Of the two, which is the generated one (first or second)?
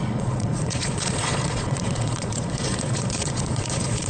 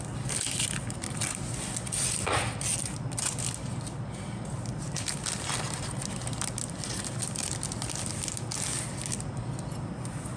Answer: first